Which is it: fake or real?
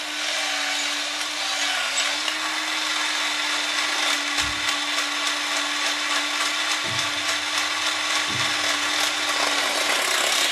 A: real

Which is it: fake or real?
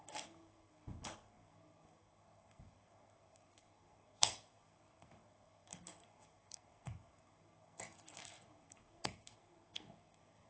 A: fake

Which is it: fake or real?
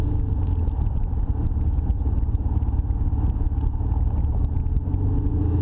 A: real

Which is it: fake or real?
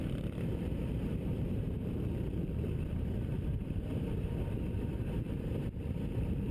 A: fake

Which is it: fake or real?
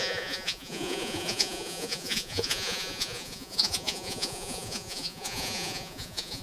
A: fake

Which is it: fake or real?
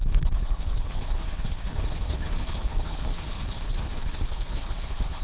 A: fake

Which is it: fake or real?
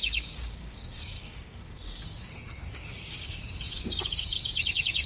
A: fake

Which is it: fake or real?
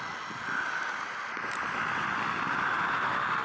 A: real